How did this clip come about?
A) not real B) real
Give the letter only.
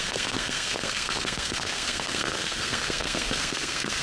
A